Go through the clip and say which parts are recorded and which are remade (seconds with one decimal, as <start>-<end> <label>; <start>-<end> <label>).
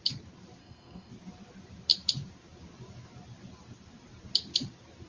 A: 0.0-0.6 recorded; 0.6-1.1 remade; 1.1-5.1 recorded